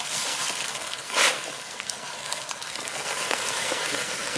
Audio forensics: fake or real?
fake